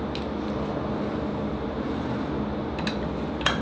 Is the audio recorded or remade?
recorded